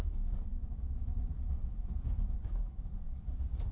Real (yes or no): no